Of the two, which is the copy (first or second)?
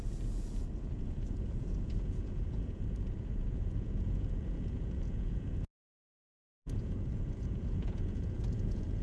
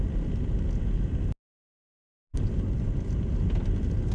first